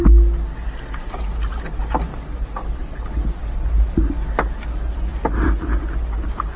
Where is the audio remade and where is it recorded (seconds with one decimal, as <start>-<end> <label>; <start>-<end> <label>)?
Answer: 0.0-6.6 recorded